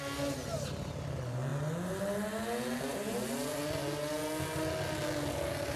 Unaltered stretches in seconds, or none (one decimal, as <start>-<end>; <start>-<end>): 0.0-5.8